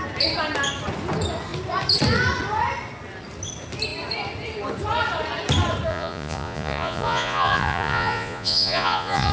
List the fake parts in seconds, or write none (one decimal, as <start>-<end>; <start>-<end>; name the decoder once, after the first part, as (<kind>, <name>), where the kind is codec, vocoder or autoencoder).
5.9-9.3 (vocoder, Vocos)